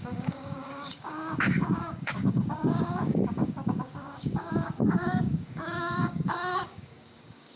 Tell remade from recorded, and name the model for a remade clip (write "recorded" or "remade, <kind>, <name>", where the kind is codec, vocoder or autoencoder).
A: remade, codec, DAC